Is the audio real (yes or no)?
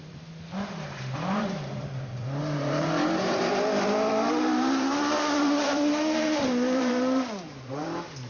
no